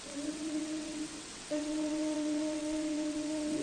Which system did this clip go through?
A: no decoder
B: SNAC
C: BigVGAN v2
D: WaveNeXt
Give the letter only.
D